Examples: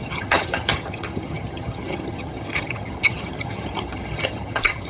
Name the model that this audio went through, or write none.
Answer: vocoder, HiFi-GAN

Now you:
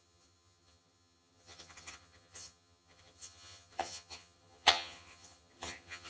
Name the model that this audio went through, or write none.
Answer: vocoder, HiFi-GAN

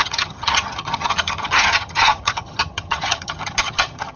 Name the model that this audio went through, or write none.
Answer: vocoder, HiFi-GAN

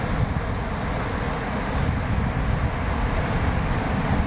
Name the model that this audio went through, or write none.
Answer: none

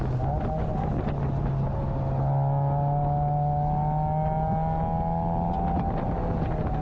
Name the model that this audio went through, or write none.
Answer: none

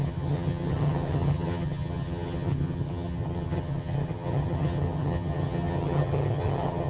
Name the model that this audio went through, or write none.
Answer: vocoder, HiFi-GAN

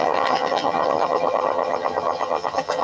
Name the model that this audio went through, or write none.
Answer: vocoder, HiFi-GAN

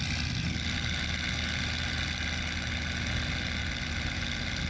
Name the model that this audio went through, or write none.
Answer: none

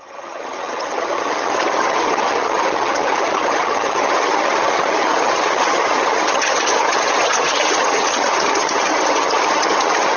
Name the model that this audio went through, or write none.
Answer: vocoder, HiFi-GAN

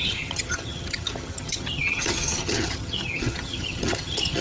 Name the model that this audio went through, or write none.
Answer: vocoder, HiFi-GAN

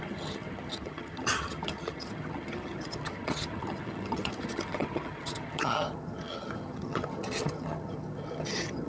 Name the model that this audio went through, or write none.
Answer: vocoder, HiFi-GAN